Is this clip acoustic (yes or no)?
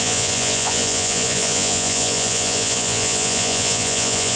no